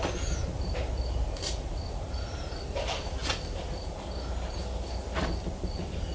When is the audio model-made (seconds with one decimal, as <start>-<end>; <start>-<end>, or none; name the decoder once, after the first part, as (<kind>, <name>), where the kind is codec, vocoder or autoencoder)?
0.0-3.2 (vocoder, BigVGAN v2); 5.6-6.1